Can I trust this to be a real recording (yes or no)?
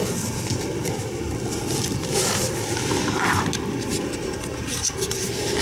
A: yes